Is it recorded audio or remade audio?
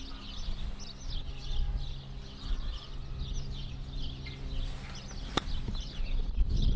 recorded